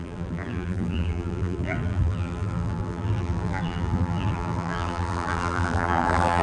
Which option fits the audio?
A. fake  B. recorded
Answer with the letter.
A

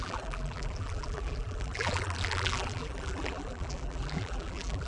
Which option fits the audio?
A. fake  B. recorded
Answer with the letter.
A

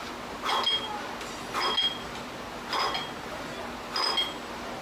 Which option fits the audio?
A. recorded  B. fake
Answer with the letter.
A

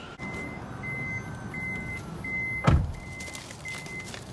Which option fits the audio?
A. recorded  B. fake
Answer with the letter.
A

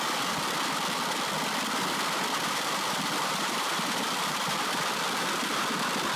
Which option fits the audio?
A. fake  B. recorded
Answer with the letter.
A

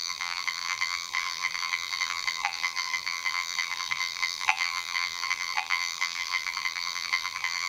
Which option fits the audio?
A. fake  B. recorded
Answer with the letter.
A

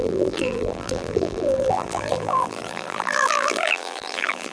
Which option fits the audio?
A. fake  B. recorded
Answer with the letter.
A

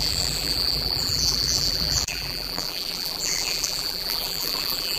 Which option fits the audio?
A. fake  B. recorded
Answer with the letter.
A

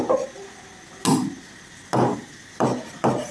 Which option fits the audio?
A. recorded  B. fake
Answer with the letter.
A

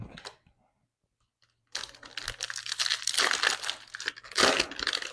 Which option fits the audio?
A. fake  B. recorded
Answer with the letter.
B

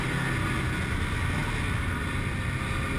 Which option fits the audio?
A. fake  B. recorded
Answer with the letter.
B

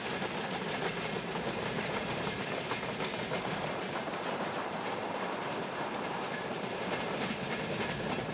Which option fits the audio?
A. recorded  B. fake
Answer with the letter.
B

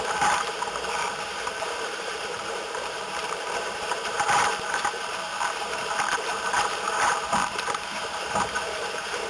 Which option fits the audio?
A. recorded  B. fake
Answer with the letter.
B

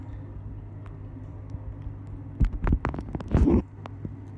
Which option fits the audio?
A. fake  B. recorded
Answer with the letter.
B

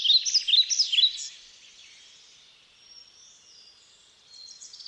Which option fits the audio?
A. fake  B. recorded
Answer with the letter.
B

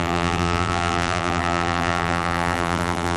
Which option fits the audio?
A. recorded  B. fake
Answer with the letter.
B